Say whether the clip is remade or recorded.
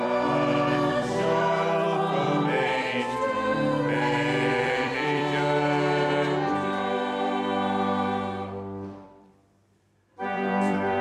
remade